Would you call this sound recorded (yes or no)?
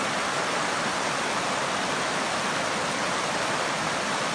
yes